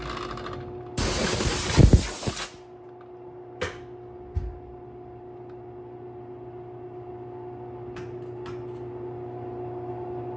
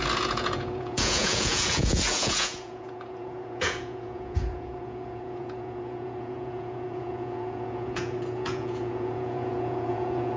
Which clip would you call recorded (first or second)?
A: first